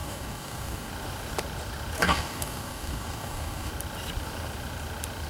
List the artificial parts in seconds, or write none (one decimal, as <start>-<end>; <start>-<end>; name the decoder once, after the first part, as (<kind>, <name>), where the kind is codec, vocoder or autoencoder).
0.0-0.9 (codec, DAC); 2.0-3.7